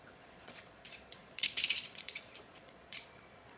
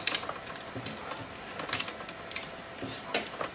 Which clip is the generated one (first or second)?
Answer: first